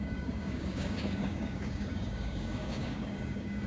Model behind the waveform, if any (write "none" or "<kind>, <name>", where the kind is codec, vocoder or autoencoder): codec, DAC